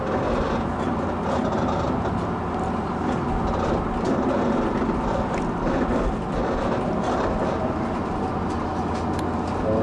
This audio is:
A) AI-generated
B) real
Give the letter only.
B